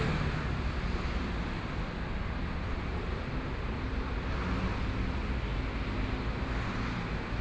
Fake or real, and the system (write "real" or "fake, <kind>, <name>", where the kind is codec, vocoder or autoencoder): real